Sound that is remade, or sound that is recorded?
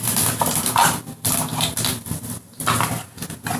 recorded